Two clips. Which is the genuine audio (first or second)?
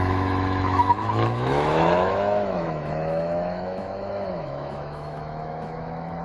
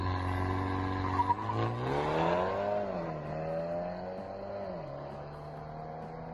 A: second